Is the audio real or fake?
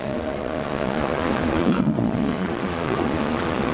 fake